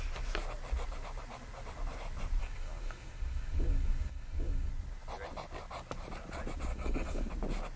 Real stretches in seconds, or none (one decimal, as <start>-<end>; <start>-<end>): 0.0-2.4; 4.7-6.7; 7.3-7.8